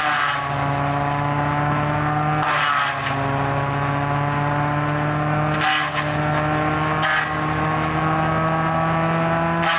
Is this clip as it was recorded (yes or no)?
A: yes